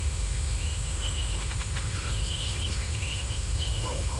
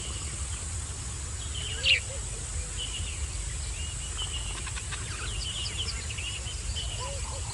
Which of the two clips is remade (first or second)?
first